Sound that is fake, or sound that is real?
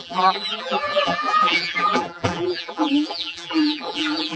fake